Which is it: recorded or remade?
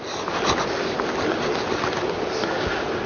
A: recorded